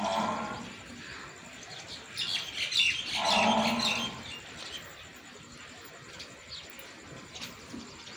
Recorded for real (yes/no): yes